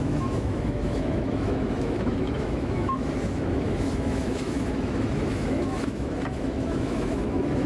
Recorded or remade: remade